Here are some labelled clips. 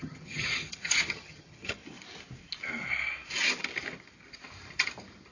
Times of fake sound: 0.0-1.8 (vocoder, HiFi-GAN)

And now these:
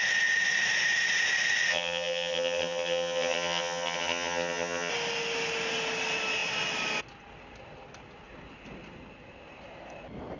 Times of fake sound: 1.7-4.9 (vocoder, HiFi-GAN)

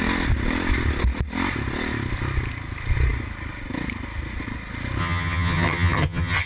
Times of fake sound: 5.0-6.5 (vocoder, HiFi-GAN)

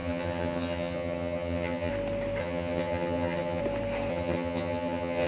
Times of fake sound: 0.0-1.9 (vocoder, HiFi-GAN); 2.4-3.6; 4.1-5.3

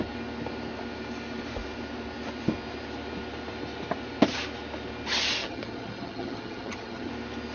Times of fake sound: 5.4-7.1 (vocoder, HiFi-GAN)